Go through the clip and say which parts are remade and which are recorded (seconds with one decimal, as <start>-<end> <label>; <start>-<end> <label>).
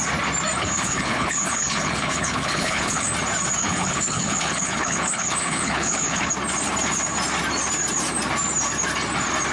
0.0-0.6 recorded; 0.6-3.1 remade; 3.1-3.6 recorded; 3.6-6.3 remade; 6.3-9.5 recorded